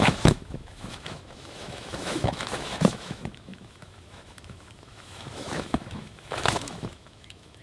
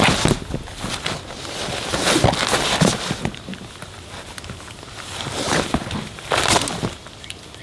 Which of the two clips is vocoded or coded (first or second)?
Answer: first